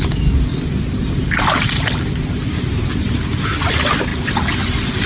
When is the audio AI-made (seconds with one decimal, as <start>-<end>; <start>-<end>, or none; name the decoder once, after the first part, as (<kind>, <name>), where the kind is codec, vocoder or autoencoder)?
none